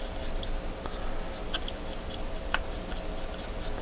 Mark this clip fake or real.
real